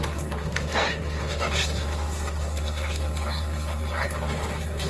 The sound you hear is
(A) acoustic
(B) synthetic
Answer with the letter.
B